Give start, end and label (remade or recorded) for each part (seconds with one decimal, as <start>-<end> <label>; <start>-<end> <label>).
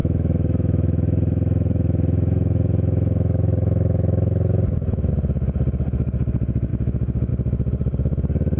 0.0-5.1 remade; 5.1-6.7 recorded; 6.7-7.3 remade; 7.3-8.6 recorded